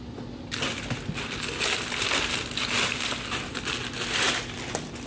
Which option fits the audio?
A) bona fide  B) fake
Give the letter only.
A